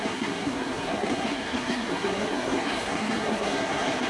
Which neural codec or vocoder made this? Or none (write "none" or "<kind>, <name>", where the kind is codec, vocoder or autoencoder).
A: codec, SNAC